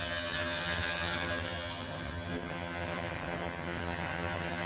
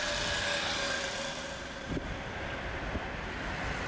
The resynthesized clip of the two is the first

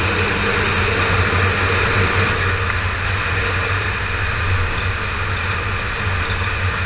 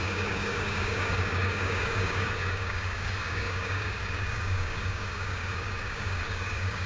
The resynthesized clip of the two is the second